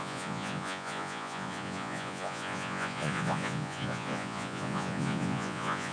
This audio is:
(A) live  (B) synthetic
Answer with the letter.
B